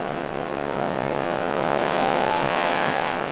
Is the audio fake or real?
fake